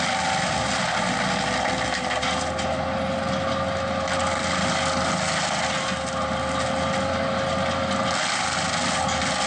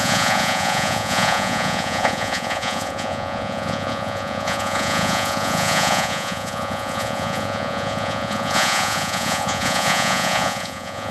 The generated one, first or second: second